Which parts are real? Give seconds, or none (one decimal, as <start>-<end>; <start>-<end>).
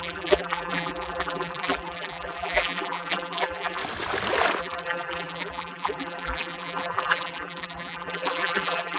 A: 3.8-4.6